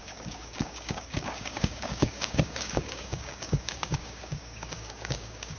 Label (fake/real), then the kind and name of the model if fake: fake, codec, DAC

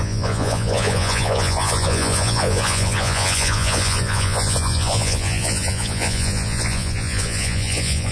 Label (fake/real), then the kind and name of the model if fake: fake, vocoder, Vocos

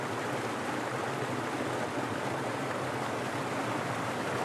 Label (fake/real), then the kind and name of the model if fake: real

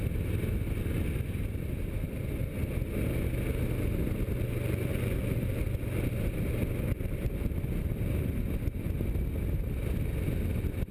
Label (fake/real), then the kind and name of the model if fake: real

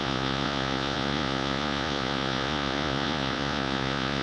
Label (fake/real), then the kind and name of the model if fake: fake, vocoder, Vocos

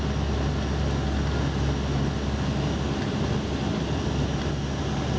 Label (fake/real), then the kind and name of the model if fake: real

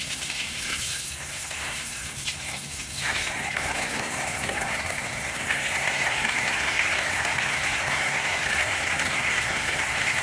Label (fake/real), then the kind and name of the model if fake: fake, codec, SNAC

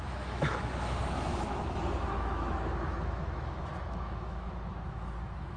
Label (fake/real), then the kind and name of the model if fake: fake, autoencoder, DAC-VAE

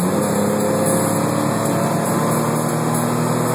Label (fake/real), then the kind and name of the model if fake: real